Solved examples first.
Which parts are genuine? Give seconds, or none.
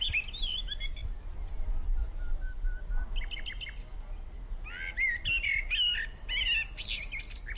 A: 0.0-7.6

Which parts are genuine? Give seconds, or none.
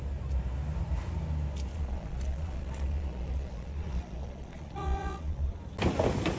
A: 0.0-1.7; 5.5-6.4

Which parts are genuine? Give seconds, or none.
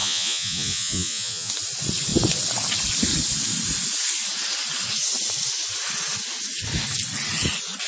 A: 1.5-7.9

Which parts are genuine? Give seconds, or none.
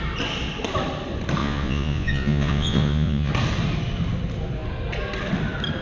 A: 0.0-1.4; 3.3-5.8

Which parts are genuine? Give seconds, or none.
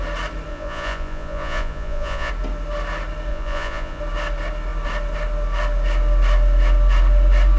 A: 0.0-0.5; 2.3-3.3; 4.0-7.6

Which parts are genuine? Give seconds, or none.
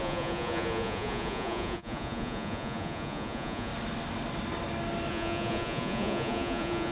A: 3.7-5.1